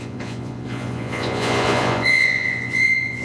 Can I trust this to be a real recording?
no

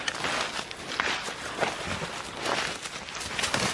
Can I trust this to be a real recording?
yes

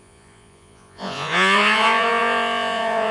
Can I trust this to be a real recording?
no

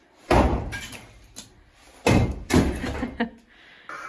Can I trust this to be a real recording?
yes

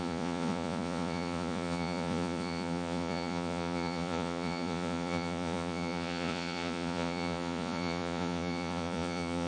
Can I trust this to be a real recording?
no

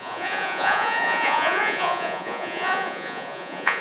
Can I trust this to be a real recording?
no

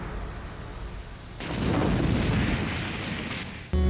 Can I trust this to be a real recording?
yes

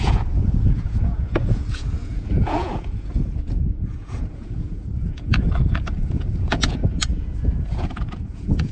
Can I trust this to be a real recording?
no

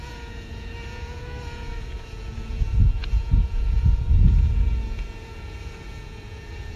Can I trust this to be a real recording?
no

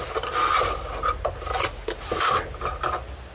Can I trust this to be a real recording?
yes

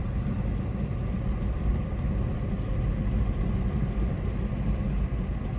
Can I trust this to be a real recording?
yes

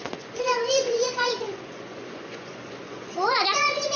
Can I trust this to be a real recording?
no